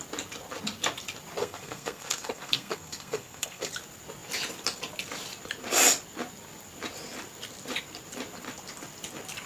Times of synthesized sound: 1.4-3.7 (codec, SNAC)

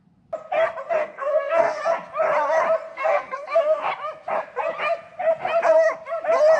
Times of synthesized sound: 1.0-1.8 (codec, SNAC); 2.9-3.9

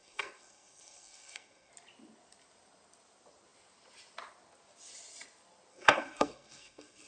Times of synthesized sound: 0.0-1.7 (codec, SNAC); 5.7-7.1

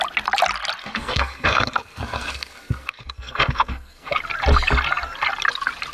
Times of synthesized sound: 0.8-4.2 (codec, SNAC)

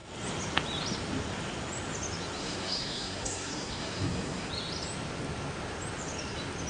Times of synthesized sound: 2.4-4.5 (codec, SNAC)